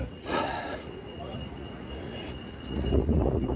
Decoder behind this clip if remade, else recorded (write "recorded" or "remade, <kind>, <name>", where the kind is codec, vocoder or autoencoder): remade, vocoder, Vocos